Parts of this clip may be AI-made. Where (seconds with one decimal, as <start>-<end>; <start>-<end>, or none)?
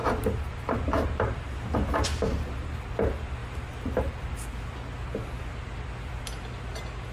none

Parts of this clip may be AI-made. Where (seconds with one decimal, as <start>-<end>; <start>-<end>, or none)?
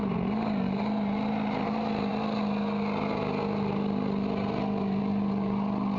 none